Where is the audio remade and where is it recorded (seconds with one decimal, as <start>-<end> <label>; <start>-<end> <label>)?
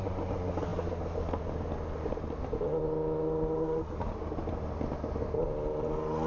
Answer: 0.0-6.3 recorded